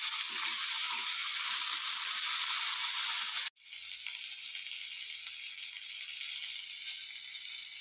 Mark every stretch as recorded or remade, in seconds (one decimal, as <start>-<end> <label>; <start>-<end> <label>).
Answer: 0.0-7.8 recorded